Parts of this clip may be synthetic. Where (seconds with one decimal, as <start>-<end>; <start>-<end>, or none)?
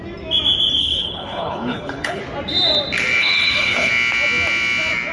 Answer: 0.8-2.2; 3.2-3.9